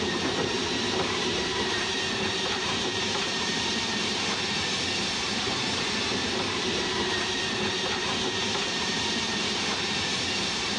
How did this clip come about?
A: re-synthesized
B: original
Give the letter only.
A